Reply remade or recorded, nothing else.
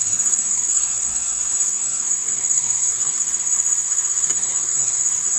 remade